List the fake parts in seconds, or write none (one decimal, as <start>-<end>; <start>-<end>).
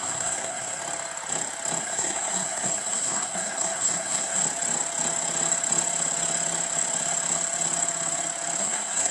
0.0-0.8; 1.8-4.4; 8.6-9.1